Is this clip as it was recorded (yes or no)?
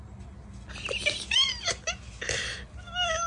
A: yes